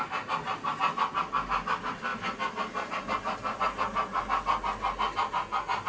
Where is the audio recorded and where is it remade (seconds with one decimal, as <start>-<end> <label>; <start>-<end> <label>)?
0.0-5.9 recorded